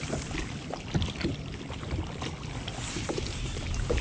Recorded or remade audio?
recorded